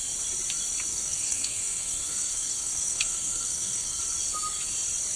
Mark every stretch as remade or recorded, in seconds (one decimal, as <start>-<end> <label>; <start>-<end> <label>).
0.0-0.9 recorded; 0.9-4.0 remade; 4.0-5.2 recorded